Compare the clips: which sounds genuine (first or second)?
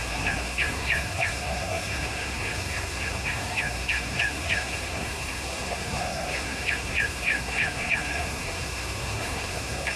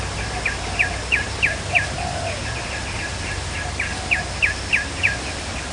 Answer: second